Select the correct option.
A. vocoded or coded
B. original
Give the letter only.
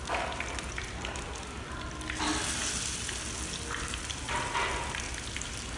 B